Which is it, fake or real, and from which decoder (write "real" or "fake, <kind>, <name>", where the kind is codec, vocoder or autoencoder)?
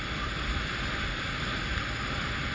real